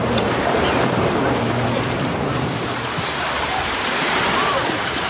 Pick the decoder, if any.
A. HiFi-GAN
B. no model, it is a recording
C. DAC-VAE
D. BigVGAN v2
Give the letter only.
D